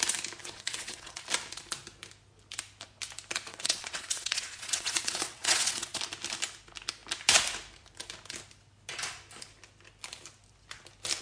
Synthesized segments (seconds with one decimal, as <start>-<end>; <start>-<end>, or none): 0.4-1.2; 3.5-6.0